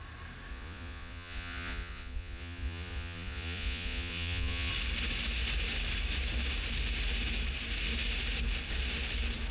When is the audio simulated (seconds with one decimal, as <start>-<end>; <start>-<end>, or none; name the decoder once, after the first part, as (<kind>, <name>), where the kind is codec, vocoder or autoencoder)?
0.5-4.7 (vocoder, Vocos)